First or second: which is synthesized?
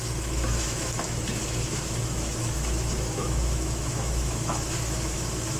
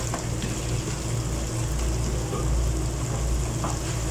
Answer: first